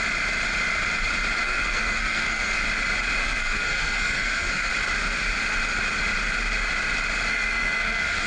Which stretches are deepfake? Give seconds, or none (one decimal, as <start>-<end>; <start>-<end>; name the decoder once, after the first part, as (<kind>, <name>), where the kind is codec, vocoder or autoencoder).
1.4-2.6 (codec, SNAC); 3.2-4.7; 7.3-8.3